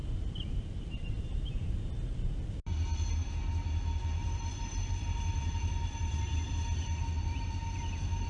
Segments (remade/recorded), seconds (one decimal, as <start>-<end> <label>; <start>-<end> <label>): 0.0-1.6 remade; 1.6-2.9 recorded; 2.9-3.5 remade; 3.5-4.2 recorded; 4.2-8.3 remade